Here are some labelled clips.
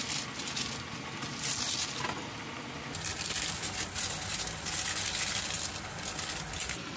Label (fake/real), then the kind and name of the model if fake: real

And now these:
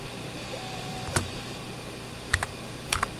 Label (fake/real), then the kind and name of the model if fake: fake, vocoder, BigVGAN v2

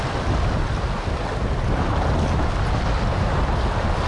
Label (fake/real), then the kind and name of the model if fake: real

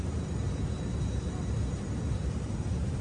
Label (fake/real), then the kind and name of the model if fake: fake, vocoder, BigVGAN v2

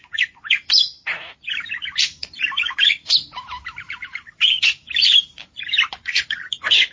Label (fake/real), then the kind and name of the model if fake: fake, vocoder, BigVGAN v2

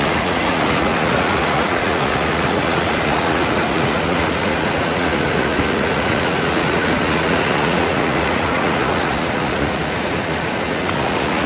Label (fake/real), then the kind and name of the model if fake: fake, vocoder, Vocos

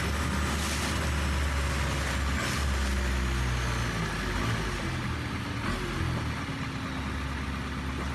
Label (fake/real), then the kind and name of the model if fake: real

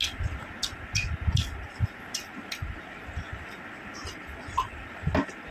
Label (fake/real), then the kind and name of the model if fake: real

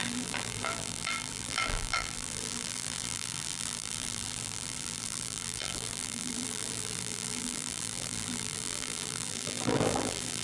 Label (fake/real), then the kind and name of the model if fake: fake, vocoder, BigVGAN v2